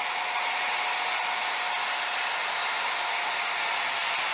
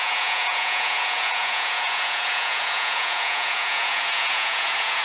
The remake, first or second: second